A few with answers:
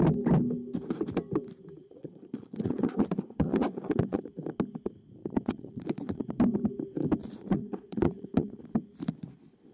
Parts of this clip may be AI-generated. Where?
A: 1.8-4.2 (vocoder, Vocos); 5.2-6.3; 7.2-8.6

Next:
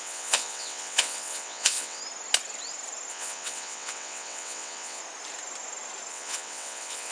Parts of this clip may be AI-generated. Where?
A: 0.0-2.0 (vocoder, WaveNeXt); 3.1-5.0; 6.1-7.1

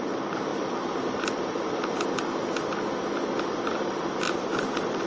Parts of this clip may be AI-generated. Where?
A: 0.0-2.3 (vocoder, BigVGAN v2); 3.4-5.1

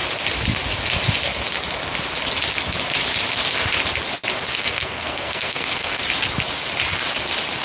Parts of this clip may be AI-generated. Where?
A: 4.5-6.0 (codec, SNAC)

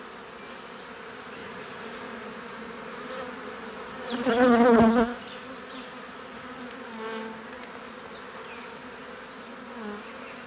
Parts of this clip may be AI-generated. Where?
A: 1.4-4.3 (vocoder, BigVGAN v2)

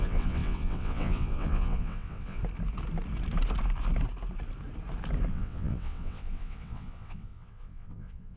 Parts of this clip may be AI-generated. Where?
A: 0.0-2.4 (vocoder, WaveNeXt); 5.3-8.4

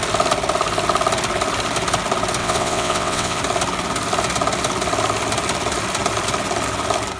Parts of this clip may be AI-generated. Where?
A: 2.4-3.4 (vocoder, WaveNeXt)